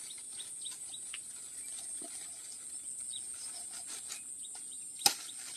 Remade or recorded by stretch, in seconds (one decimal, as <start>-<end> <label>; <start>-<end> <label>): 0.0-5.6 recorded